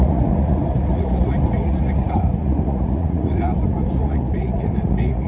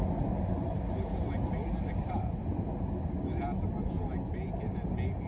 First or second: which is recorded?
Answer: second